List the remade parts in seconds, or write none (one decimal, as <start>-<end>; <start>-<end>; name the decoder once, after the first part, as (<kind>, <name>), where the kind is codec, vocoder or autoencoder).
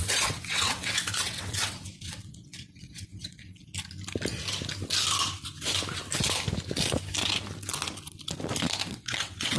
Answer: 0.0-3.7 (vocoder, WaveNeXt); 8.9-9.6